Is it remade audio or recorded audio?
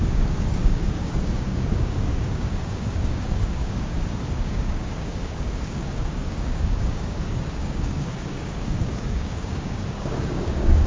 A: remade